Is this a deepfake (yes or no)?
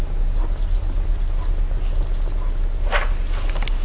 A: no